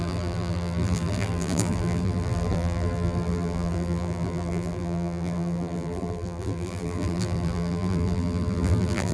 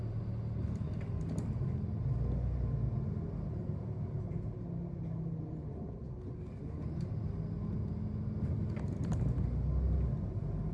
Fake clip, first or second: first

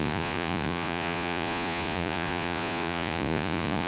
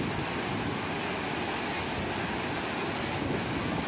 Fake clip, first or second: first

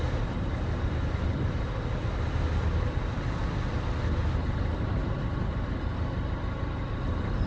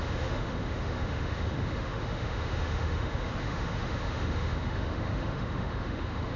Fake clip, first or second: second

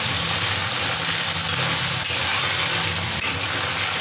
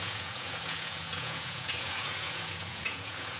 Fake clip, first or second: second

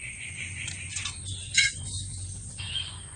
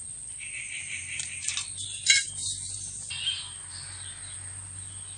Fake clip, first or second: first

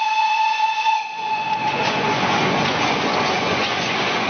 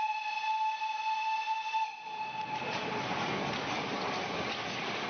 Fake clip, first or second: first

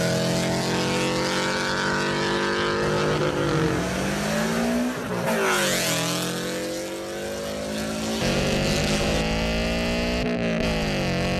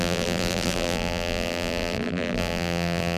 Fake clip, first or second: second